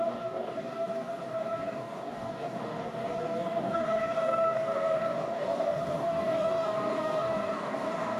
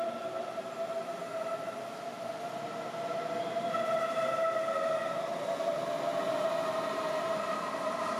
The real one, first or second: second